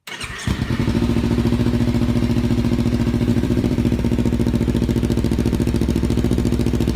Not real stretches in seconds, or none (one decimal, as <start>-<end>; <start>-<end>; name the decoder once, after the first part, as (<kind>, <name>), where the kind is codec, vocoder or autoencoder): 3.3-4.0 (vocoder, BigVGAN v2)